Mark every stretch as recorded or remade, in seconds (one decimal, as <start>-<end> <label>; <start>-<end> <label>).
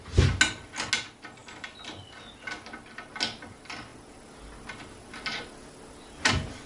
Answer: 0.0-1.4 recorded; 1.4-2.1 remade; 2.1-6.7 recorded